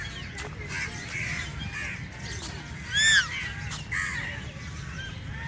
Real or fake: real